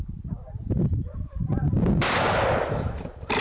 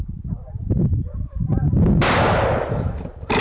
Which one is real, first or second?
second